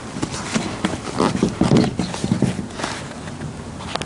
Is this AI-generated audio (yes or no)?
no